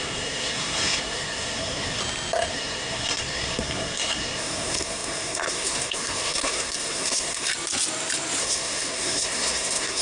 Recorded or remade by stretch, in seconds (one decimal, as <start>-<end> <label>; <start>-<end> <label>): 0.0-2.0 remade; 2.0-2.5 recorded; 2.5-7.5 remade; 7.5-8.4 recorded; 8.4-10.0 remade